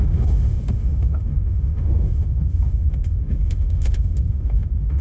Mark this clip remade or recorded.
remade